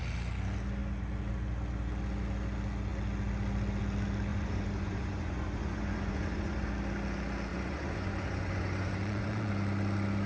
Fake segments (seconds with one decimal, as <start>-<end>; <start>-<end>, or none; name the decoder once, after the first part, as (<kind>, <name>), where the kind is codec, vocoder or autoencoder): 4.3-6.7 (vocoder, Vocos); 7.5-9.5